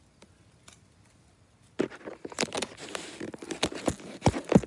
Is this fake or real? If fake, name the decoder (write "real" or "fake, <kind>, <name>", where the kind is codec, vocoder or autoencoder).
real